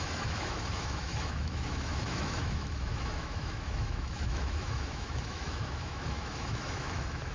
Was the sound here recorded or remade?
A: remade